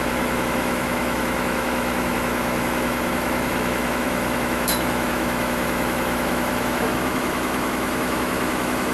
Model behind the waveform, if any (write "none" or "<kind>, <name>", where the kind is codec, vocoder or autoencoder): autoencoder, DAC-VAE